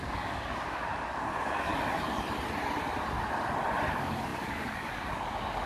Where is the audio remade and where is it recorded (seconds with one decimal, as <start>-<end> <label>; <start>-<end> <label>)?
0.0-1.7 remade; 1.7-3.9 recorded; 3.9-5.7 remade